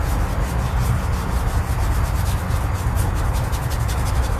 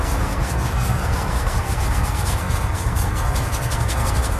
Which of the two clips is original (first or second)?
first